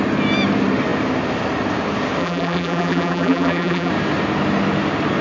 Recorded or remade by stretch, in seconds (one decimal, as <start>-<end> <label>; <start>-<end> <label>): 0.0-2.2 recorded; 2.2-3.9 remade; 3.9-5.2 recorded